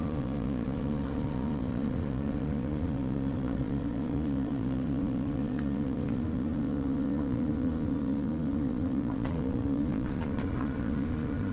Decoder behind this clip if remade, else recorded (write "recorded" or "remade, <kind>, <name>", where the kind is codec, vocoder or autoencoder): remade, vocoder, Vocos